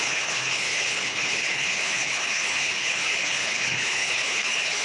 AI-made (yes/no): yes